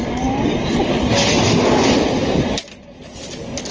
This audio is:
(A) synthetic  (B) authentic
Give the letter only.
B